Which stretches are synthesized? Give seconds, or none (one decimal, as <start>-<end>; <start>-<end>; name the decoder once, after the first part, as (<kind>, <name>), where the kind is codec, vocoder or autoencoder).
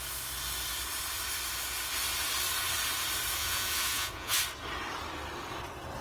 3.4-4.4 (vocoder, Vocos)